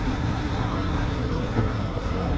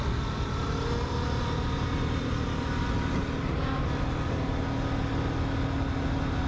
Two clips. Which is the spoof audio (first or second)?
first